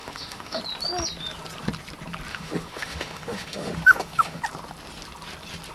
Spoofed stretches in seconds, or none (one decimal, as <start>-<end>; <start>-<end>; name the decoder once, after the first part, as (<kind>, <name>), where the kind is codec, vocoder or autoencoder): 0.0-0.6 (autoencoder, DAC-VAE); 2.3-4.4